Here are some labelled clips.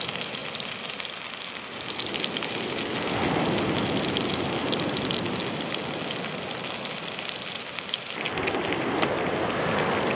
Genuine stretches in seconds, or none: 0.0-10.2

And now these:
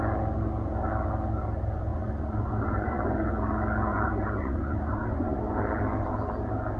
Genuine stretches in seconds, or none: 0.0-1.9; 3.0-3.9; 5.4-6.8

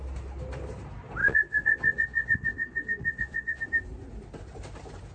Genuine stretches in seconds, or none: 0.0-1.2; 3.6-5.1